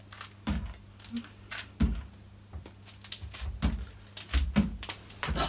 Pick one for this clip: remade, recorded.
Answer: recorded